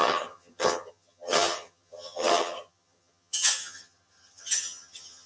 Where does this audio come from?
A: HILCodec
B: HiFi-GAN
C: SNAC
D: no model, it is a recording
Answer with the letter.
B